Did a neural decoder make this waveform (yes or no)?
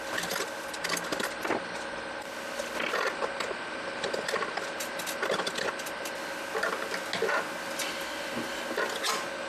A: no